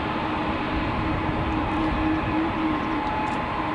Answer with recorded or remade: remade